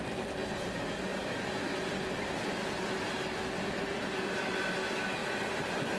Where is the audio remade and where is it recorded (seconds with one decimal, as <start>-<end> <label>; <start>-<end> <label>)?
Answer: 0.0-1.1 recorded; 1.1-2.1 remade; 2.1-6.0 recorded